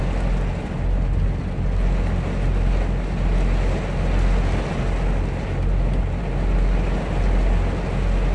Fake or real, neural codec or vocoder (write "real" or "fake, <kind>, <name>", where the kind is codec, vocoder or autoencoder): real